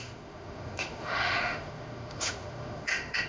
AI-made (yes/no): yes